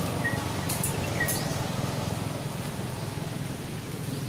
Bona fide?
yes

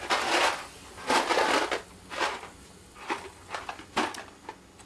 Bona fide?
yes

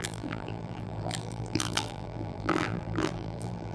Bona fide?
no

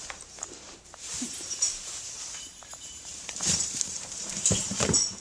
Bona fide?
no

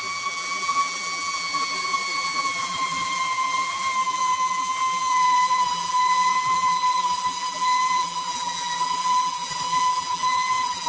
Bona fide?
no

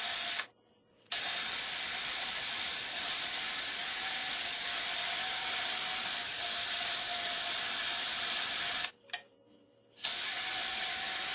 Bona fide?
no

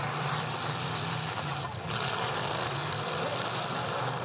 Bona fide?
no